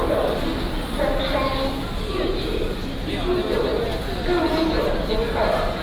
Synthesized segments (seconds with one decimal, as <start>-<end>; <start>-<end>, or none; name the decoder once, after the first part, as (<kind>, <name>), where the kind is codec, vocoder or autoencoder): none